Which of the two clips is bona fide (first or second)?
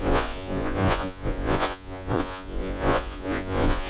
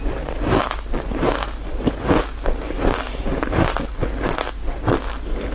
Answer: second